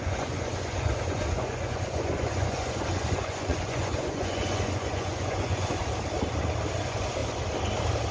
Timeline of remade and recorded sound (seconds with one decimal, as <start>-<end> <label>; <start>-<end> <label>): 0.0-5.8 remade; 5.8-6.8 recorded; 6.8-7.2 remade; 7.2-8.1 recorded